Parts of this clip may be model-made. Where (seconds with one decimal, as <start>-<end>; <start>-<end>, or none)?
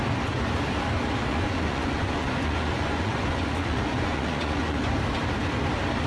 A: 1.3-4.9